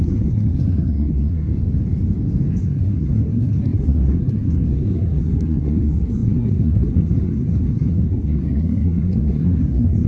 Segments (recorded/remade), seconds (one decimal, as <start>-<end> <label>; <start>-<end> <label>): 0.0-1.5 remade; 1.5-2.6 recorded; 2.6-10.1 remade